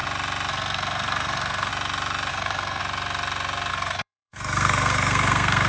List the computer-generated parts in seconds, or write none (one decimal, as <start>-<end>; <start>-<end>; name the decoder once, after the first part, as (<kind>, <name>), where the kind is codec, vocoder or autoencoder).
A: 0.5-1.7 (codec, SNAC); 2.3-2.8; 3.7-5.7